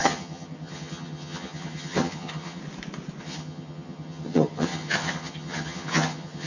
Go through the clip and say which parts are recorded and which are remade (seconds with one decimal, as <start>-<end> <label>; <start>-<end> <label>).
0.0-2.6 remade; 2.6-3.2 recorded; 3.2-6.5 remade